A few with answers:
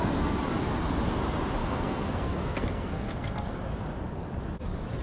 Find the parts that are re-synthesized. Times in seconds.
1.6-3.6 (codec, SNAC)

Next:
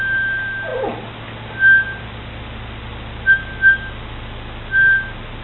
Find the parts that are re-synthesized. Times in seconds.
none

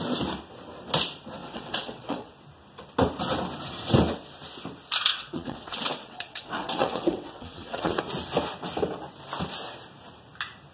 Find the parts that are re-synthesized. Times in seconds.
1.4-2.3 (vocoder, WaveNeXt); 5.1-8.0